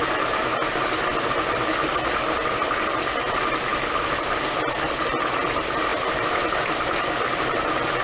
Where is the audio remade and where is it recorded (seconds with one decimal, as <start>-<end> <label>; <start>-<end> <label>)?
0.0-5.9 recorded; 5.9-7.4 remade; 7.4-8.0 recorded